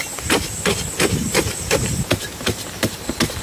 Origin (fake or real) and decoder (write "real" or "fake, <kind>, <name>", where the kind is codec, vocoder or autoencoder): real